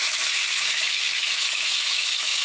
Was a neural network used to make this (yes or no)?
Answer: yes